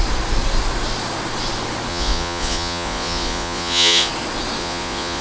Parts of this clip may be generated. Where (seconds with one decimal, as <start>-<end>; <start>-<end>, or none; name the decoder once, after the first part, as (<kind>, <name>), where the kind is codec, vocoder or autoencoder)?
1.9-4.1 (vocoder, Vocos); 4.6-5.2